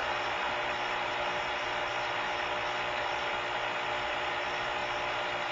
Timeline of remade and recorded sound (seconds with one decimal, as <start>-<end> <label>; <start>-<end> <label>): 0.0-3.3 remade; 3.3-4.8 recorded; 4.8-5.5 remade